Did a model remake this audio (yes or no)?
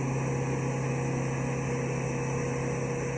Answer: no